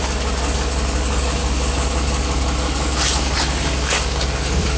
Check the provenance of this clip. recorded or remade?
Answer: remade